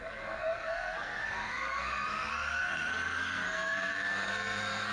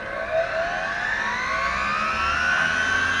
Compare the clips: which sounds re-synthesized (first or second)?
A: first